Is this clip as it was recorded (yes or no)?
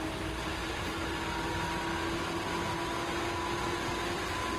yes